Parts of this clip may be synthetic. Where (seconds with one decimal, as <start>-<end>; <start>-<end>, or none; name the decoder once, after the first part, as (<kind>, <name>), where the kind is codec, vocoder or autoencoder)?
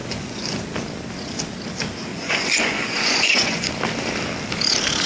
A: 0.0-0.6 (vocoder, Vocos); 2.1-3.7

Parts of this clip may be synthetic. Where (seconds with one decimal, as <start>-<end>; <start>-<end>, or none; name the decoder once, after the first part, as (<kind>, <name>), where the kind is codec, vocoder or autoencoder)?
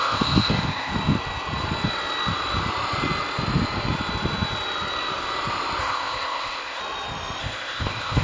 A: 0.0-0.9 (codec, ZipCodec); 5.8-6.8; 7.4-8.2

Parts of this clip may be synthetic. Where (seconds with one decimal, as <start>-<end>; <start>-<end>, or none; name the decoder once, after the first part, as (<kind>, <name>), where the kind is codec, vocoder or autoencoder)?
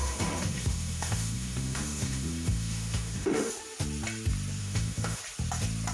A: 0.0-3.5 (autoencoder, DAC-VAE); 4.6-5.2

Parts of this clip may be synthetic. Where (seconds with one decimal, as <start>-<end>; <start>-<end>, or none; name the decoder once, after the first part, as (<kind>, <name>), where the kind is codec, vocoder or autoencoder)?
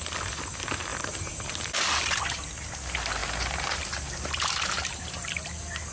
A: none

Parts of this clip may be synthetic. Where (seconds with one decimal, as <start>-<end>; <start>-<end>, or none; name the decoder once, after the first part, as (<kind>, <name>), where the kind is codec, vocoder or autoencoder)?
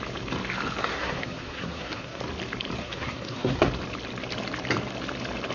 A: 0.9-2.2 (codec, SNAC); 2.8-3.7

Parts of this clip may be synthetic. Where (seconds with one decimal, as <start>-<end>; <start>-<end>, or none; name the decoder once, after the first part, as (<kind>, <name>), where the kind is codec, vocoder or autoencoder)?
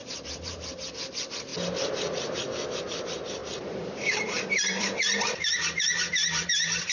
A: 0.0-0.9 (vocoder, BigVGAN v2); 3.4-6.9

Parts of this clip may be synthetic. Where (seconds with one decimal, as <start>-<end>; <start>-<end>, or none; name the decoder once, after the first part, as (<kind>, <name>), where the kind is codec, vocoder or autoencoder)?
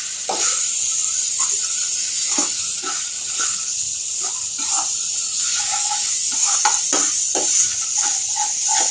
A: 2.0-3.0 (autoencoder, DAC-VAE); 5.3-6.6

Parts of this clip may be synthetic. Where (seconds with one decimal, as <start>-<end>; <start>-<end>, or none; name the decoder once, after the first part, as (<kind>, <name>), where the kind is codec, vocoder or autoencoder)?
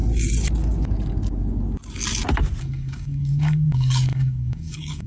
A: 2.6-5.1 (codec, DAC)